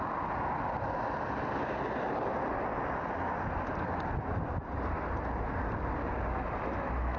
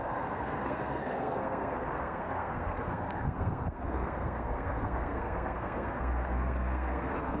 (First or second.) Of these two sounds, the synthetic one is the second